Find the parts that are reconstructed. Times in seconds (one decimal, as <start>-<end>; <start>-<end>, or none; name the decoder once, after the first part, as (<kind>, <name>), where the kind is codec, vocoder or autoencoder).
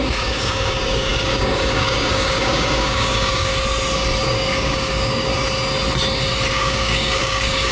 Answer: 0.0-3.5 (codec, DAC); 4.3-5.3; 6.5-7.7